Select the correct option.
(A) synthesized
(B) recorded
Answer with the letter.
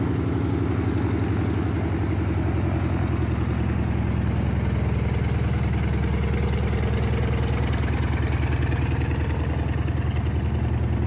B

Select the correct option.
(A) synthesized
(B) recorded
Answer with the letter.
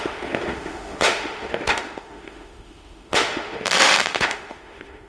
A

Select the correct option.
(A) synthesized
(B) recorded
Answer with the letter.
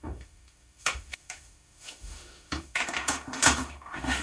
A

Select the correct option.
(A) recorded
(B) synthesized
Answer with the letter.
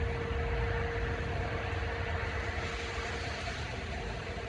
A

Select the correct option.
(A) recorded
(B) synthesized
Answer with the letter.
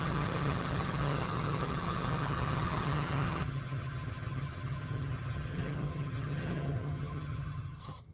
B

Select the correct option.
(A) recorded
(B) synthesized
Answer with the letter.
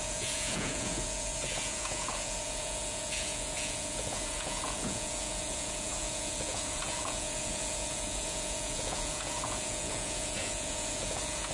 B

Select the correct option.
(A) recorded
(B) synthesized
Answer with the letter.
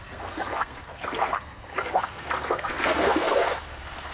B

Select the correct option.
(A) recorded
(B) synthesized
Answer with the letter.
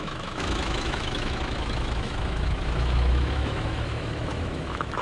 B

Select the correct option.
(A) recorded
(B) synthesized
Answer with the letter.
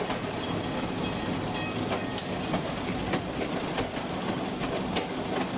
A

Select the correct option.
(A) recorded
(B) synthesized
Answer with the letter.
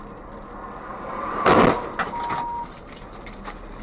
A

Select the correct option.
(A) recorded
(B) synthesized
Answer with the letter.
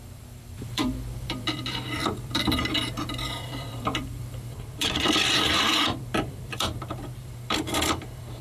B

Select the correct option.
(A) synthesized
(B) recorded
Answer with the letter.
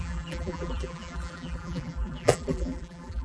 A